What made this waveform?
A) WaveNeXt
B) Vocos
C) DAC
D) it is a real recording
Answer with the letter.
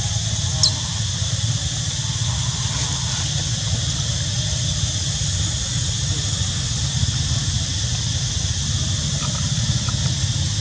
D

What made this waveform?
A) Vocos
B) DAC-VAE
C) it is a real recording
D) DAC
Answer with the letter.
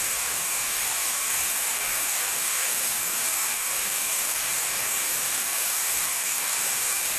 D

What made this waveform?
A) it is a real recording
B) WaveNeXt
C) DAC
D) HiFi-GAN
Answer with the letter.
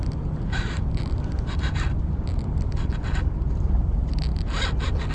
A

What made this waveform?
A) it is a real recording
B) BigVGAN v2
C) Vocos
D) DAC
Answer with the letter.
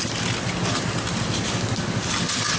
A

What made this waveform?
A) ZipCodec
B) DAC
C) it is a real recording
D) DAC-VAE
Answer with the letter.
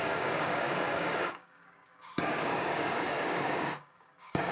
B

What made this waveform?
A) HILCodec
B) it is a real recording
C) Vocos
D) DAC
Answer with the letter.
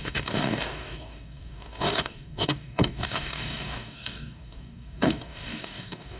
D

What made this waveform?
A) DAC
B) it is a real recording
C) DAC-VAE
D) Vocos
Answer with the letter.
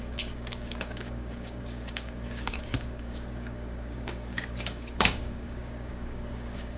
A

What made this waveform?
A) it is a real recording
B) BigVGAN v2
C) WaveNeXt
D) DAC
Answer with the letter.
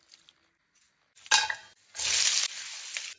A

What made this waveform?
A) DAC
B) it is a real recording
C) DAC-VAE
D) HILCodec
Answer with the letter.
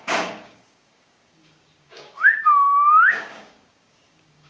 A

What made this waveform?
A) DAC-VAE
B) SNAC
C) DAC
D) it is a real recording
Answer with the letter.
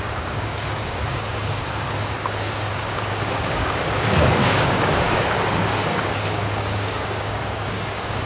C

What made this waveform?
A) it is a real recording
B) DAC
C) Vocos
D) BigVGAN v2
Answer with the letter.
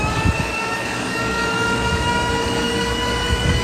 B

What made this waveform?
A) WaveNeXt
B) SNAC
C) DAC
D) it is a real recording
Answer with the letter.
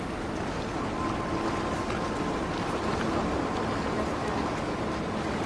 D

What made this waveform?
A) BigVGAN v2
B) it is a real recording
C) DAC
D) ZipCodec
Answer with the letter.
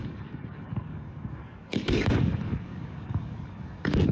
C